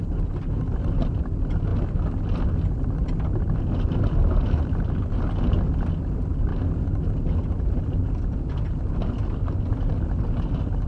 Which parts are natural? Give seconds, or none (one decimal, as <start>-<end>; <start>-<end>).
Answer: 0.0-10.9